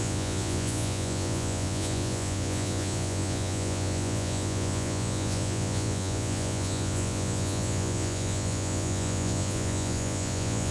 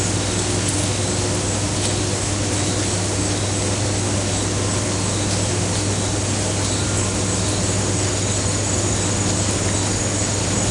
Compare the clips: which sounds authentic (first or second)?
second